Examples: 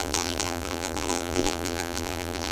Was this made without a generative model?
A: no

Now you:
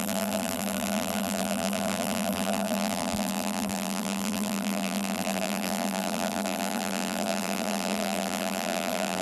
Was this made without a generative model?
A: no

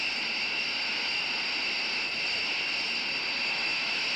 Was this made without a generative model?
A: yes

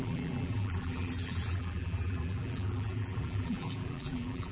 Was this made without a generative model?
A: no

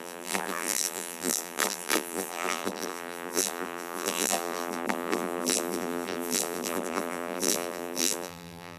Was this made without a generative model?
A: no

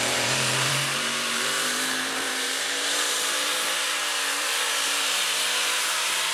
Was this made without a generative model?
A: no